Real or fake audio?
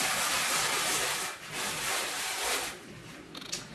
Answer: real